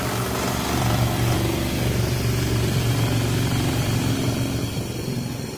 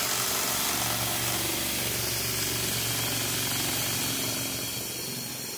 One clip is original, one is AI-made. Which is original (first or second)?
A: second